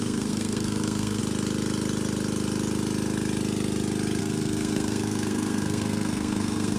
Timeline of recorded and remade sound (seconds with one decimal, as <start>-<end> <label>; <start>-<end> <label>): 0.0-1.2 remade; 1.2-4.2 recorded; 4.2-6.8 remade